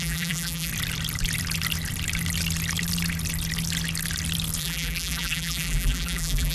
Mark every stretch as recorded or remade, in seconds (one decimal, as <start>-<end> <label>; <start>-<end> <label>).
0.0-0.7 remade; 0.7-4.6 recorded; 4.6-6.5 remade